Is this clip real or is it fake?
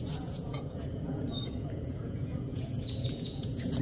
fake